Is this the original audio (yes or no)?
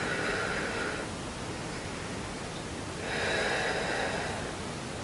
yes